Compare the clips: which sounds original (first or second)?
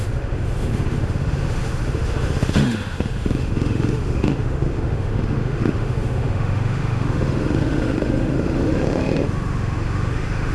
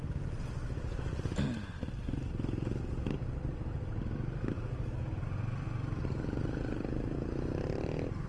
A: second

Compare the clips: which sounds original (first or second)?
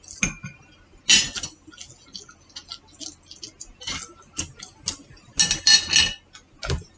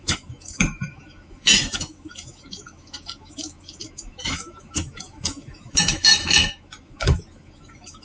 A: first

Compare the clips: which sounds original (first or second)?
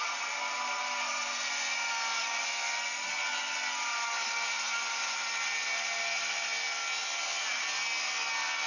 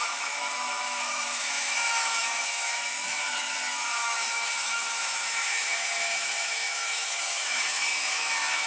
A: first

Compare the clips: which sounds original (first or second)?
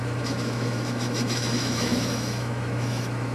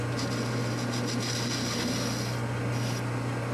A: second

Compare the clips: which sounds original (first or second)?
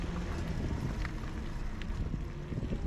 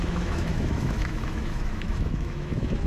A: first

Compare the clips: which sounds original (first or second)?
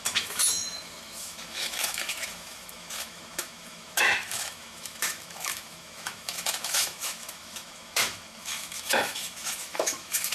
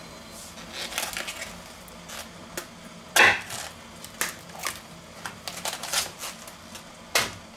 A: second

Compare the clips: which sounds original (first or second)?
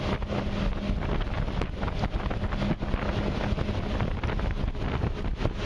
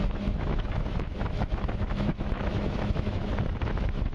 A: first